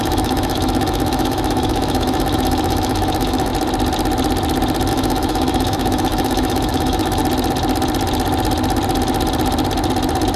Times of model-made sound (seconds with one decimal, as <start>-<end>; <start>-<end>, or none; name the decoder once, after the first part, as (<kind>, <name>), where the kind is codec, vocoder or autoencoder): 0.0-3.5 (autoencoder, DAC-VAE); 4.9-7.2